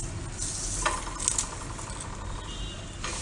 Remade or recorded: recorded